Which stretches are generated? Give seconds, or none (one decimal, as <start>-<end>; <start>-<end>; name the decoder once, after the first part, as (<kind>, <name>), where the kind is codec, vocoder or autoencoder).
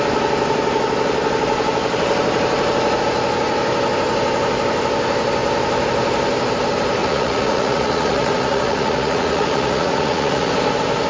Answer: 7.0-10.5 (vocoder, Vocos)